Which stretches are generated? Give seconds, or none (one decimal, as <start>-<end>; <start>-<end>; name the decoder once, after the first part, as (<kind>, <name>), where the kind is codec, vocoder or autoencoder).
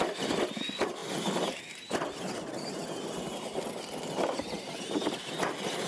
none